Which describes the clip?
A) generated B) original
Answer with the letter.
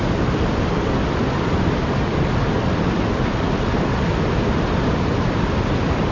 B